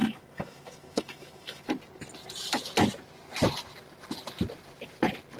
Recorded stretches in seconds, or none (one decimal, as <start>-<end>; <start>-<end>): 1.7-5.4